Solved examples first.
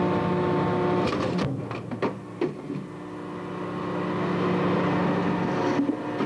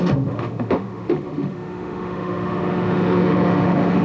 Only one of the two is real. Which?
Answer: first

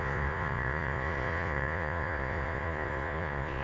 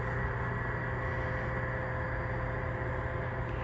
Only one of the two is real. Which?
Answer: second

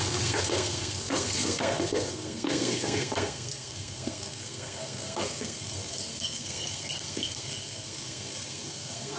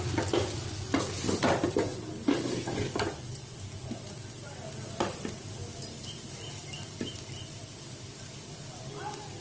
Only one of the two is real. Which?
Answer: second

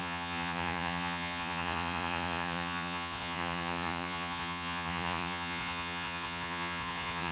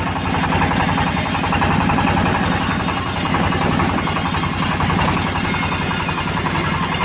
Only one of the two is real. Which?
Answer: second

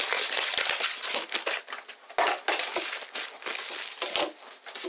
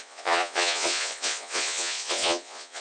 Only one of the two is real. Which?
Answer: first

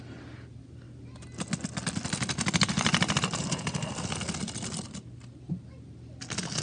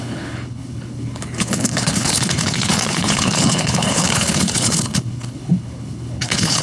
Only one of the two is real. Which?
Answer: first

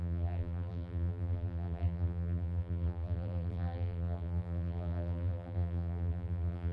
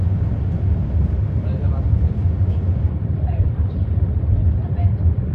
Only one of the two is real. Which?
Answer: second